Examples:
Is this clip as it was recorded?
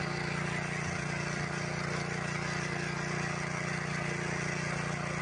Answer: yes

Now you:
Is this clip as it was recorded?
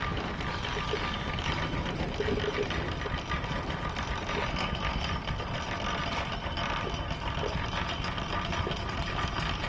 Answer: yes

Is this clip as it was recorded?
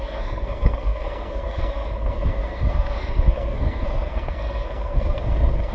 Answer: no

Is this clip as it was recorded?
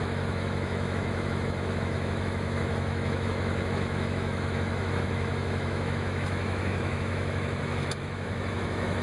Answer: no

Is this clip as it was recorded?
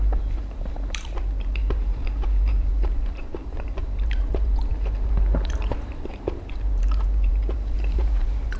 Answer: no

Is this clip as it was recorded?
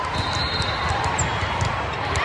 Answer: yes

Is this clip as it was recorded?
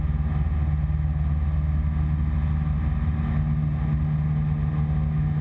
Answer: yes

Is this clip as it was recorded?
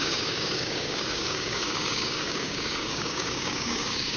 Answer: no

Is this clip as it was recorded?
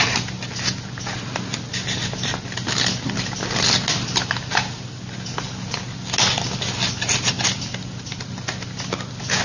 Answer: yes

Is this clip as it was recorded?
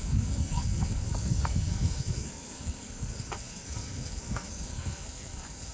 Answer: no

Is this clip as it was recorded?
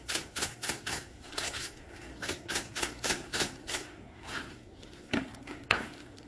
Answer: no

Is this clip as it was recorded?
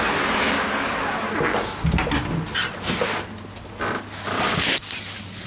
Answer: yes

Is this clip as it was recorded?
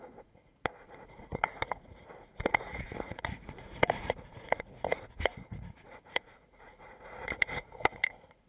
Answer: no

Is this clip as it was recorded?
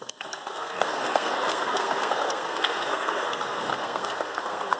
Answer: no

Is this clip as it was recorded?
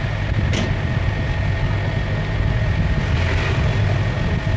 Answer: yes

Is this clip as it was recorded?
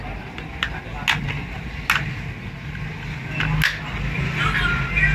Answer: yes